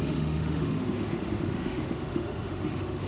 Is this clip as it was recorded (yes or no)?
no